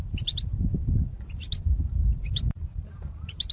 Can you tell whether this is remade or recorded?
remade